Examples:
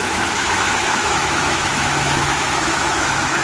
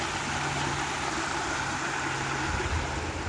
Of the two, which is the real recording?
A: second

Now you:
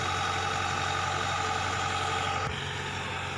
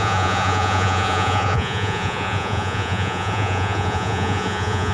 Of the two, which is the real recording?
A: first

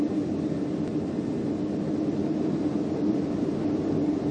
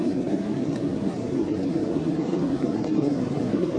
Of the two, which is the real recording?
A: first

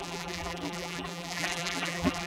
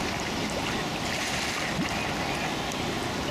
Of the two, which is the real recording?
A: second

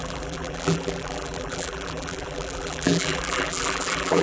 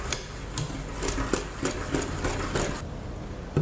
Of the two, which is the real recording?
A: second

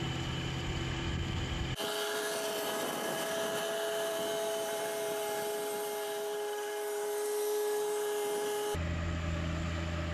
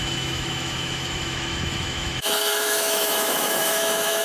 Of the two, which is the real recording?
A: first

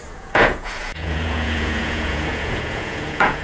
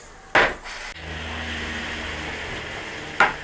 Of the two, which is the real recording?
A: second